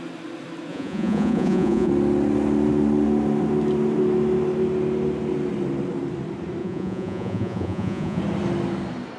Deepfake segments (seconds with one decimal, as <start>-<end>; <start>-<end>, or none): 0.7-1.9; 6.6-8.2